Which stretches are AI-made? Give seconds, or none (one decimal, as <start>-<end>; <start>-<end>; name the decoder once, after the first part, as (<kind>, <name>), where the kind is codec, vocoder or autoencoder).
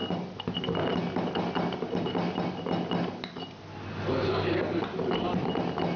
none